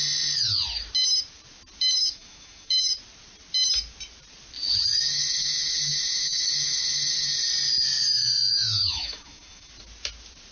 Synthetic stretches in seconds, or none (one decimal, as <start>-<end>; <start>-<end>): 2.0-2.9; 4.9-7.5; 8.5-9.7